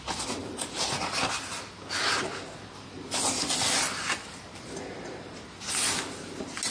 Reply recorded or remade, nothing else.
recorded